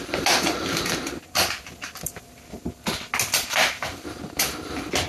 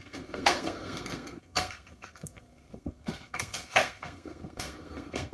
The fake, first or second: second